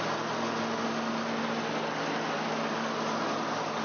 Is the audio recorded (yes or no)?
yes